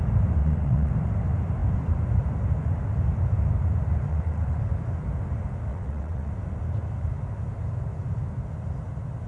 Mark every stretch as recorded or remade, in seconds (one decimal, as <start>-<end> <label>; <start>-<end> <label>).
0.0-0.4 recorded; 0.4-0.9 remade; 0.9-4.1 recorded; 4.1-4.6 remade; 4.6-5.7 recorded; 5.7-6.3 remade; 6.3-9.3 recorded